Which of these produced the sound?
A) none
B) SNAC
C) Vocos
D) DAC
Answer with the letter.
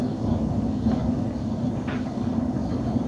D